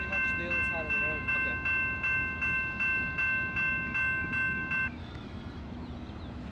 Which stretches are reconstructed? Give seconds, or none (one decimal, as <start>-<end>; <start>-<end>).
0.7-1.3; 5.0-5.6